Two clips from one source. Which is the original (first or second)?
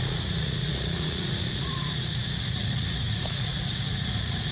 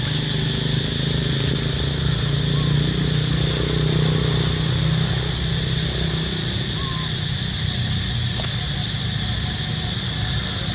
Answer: second